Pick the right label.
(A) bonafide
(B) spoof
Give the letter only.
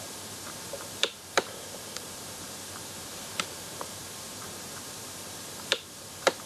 B